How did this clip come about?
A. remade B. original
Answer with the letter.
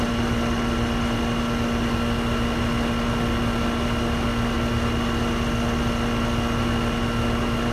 B